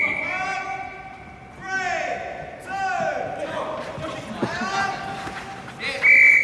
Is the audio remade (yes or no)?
no